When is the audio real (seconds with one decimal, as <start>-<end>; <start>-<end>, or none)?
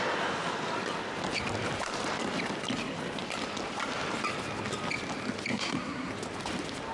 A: 0.0-5.5; 6.1-6.9